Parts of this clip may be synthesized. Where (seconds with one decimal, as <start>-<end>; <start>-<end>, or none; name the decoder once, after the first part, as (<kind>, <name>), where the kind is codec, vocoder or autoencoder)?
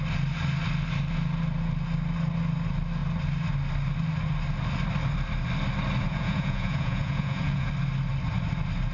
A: 6.0-7.7 (vocoder, Vocos)